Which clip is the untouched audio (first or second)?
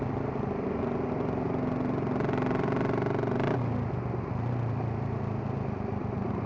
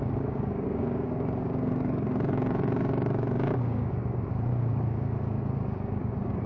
first